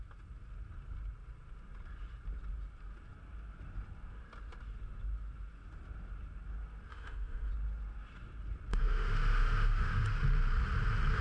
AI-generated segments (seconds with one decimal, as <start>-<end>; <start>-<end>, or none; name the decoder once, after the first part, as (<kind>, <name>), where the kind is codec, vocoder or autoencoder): 6.9-7.5 (autoencoder, DAC-VAE); 8.7-10.0